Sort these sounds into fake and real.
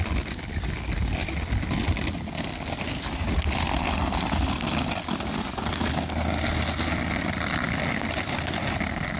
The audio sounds real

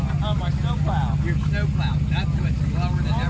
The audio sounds real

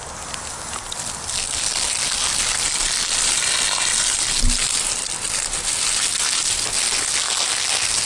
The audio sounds real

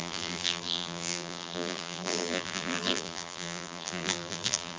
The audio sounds fake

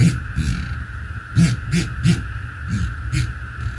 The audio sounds real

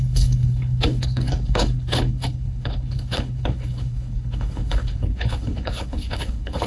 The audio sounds fake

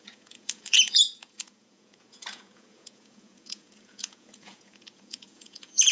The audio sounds fake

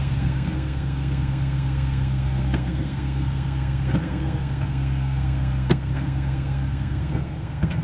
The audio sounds fake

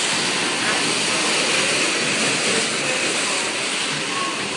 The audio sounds real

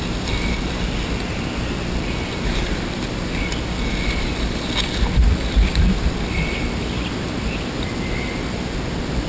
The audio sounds real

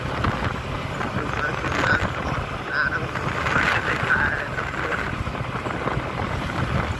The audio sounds real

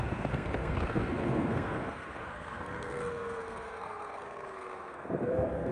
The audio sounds fake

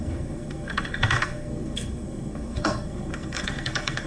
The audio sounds fake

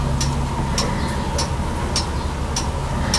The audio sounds real